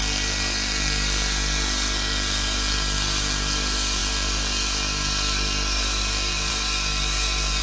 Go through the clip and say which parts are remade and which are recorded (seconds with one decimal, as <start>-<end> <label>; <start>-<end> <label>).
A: 0.0-7.6 remade

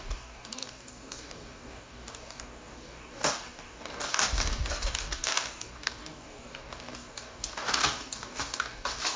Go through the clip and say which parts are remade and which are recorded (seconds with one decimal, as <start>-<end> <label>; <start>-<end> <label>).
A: 0.0-9.2 remade